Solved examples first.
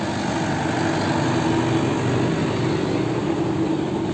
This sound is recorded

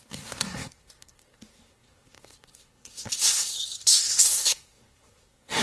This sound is remade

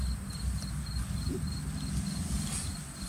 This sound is recorded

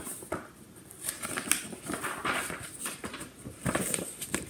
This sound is recorded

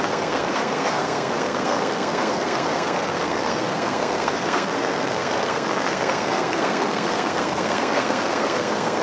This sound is remade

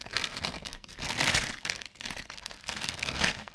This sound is remade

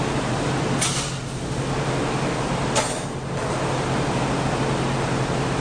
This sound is recorded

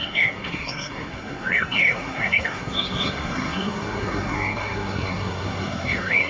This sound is remade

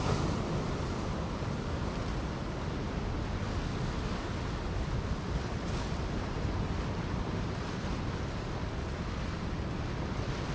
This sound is recorded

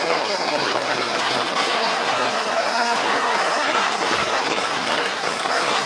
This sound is remade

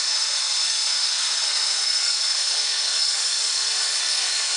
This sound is remade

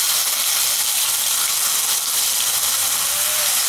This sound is recorded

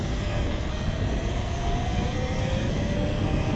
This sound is remade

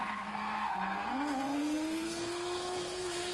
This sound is remade